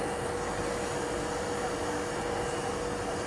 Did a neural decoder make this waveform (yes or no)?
no